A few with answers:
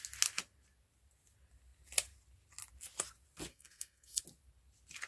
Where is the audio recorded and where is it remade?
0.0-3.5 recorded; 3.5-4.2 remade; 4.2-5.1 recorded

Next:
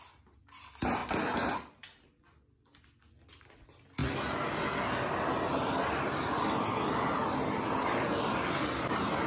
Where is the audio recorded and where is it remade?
0.0-9.3 recorded

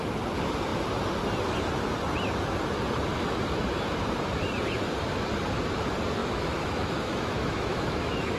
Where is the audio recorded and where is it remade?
0.0-6.2 recorded; 6.2-8.4 remade

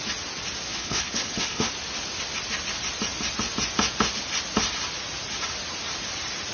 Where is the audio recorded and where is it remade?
0.0-0.7 recorded; 0.7-1.7 remade; 1.7-6.5 recorded